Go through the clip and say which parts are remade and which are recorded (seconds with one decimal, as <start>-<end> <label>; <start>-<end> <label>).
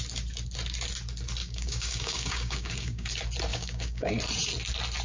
0.0-1.4 recorded; 1.4-3.1 remade; 3.1-3.5 recorded; 3.5-4.1 remade; 4.1-5.0 recorded